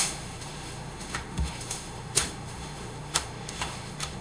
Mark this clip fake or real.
fake